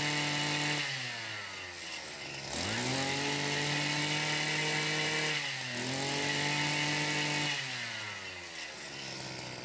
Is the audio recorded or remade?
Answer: recorded